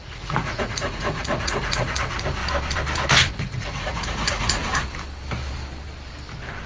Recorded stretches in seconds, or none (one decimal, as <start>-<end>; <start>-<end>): 2.4-3.3; 4.6-6.7